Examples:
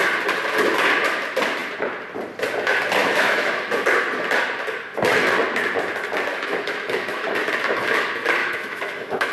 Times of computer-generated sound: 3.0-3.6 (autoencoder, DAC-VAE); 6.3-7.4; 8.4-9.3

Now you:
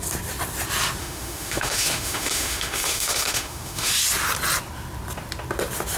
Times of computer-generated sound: 1.0-3.9 (autoencoder, DAC-VAE)

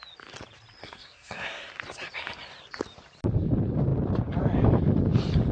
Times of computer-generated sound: 0.8-1.7 (codec, SNAC)

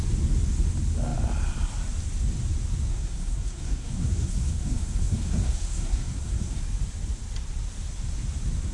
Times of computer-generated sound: 2.9-6.6 (codec, SNAC)